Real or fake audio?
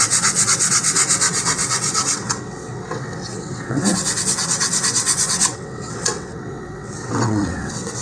fake